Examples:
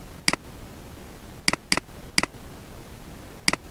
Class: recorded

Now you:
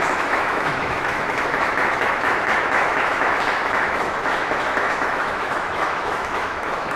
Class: remade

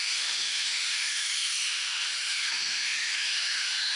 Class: remade